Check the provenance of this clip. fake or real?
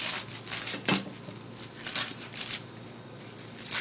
real